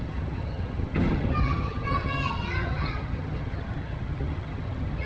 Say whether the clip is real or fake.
fake